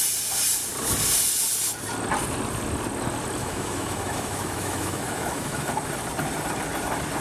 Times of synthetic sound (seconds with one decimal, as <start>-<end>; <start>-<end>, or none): 3.4-5.7